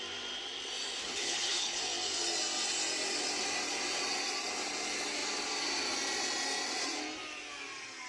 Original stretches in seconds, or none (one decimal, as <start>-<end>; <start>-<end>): 0.0-1.0; 1.8-8.1